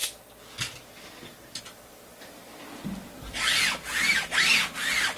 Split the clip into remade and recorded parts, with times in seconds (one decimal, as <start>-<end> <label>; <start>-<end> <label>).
0.0-5.2 recorded